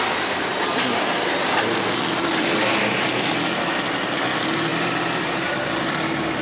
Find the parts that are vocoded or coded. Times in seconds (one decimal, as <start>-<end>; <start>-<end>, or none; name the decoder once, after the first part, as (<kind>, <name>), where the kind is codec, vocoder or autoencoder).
none